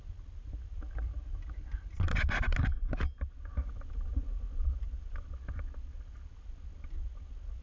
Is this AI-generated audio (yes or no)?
no